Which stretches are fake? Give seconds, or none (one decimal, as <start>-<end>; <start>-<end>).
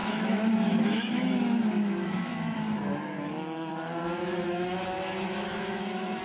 0.0-3.7; 4.2-6.2